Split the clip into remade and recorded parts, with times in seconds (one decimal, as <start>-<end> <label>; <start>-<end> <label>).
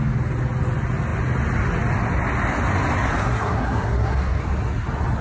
0.0-3.2 recorded; 3.2-4.4 remade; 4.4-5.2 recorded